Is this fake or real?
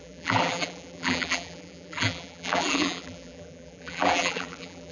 fake